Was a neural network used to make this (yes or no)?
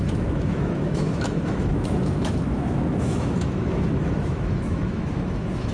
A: yes